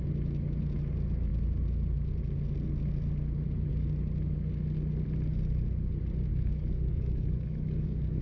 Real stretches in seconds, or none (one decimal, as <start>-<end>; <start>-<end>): 0.0-6.3